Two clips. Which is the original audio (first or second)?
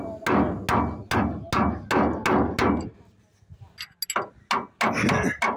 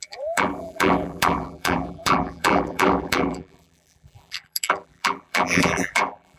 first